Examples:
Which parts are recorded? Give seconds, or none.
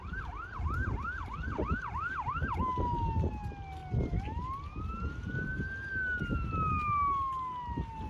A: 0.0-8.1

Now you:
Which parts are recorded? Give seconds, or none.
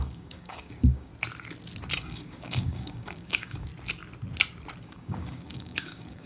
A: 1.1-2.0; 3.7-4.8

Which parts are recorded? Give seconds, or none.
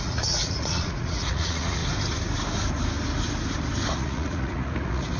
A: 1.8-4.0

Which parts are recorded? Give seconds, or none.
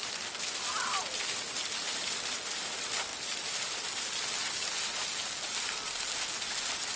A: 0.0-7.0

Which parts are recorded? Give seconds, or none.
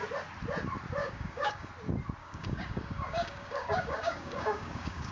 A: 0.0-1.0; 1.7-2.2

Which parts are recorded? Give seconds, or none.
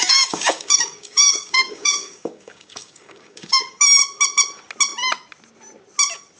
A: 3.8-6.4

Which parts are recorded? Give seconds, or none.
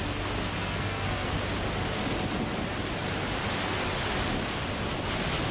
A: 0.0-0.6; 1.3-5.5